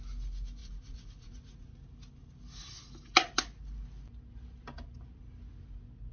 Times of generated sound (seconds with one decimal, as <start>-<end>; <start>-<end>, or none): 0.6-1.8